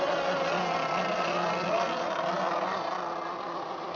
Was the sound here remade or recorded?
recorded